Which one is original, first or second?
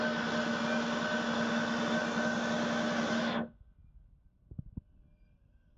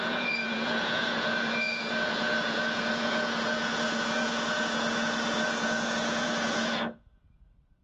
first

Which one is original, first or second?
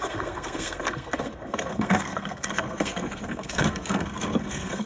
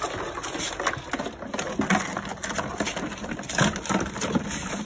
second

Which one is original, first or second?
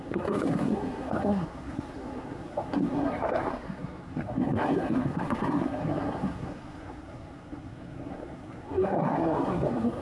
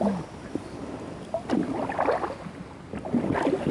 second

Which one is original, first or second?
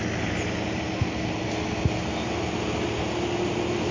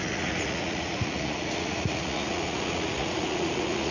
first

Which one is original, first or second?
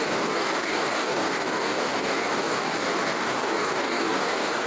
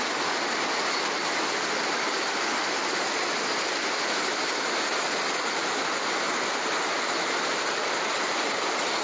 second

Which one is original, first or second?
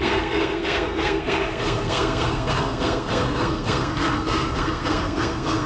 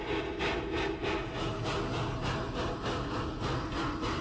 second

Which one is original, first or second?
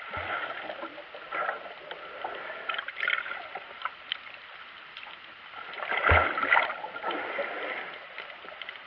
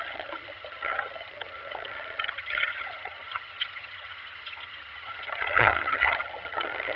first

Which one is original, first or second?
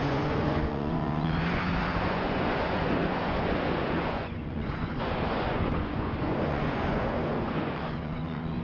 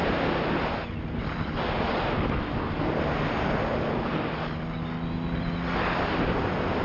second